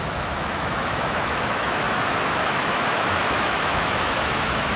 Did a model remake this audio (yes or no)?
yes